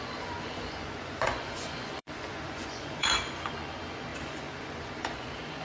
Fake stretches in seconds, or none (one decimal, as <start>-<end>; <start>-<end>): 0.0-5.6